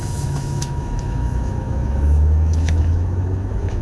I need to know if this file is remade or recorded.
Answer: remade